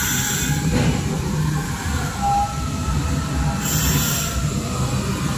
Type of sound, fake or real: real